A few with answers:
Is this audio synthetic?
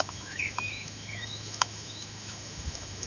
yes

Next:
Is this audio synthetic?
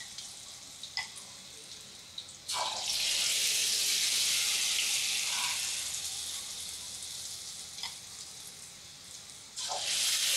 no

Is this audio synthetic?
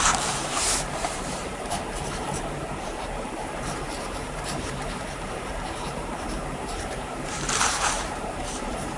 yes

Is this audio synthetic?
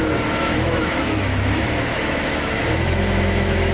yes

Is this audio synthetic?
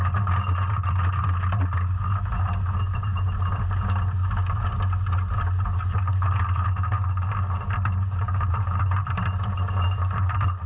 no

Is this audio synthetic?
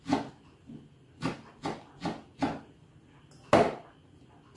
no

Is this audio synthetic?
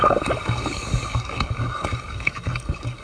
yes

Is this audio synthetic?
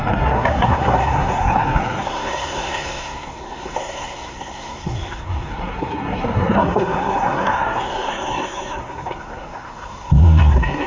yes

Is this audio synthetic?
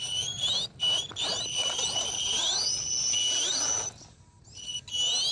no